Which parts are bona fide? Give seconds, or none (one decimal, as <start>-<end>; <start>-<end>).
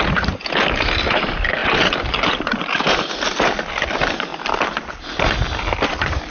0.0-6.3